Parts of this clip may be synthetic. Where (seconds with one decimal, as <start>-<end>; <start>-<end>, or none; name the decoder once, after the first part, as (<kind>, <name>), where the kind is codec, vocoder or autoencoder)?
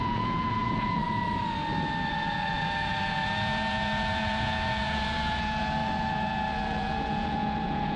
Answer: 0.0-1.0 (vocoder, Vocos); 2.1-8.0